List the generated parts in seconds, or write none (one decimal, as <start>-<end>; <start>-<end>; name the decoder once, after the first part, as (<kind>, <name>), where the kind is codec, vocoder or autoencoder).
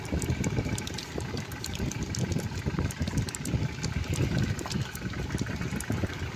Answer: 1.0-3.0 (vocoder, BigVGAN v2)